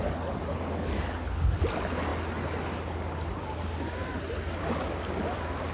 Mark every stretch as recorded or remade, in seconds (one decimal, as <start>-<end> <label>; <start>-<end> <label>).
0.0-5.7 recorded